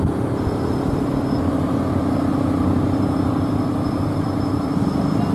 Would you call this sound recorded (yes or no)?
yes